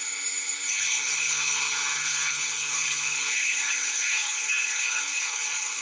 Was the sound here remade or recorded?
remade